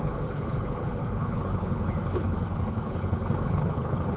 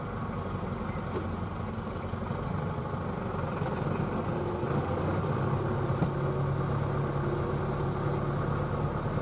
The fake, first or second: first